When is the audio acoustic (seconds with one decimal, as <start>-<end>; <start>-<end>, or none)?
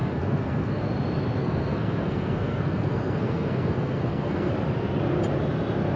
0.8-1.4; 4.5-6.0